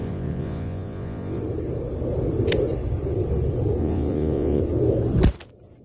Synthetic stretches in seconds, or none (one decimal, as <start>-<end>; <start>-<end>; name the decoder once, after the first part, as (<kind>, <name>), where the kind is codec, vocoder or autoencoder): 0.0-1.4 (vocoder, Vocos); 3.8-4.6